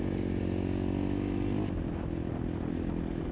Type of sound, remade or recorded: recorded